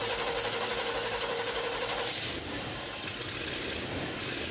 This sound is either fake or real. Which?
real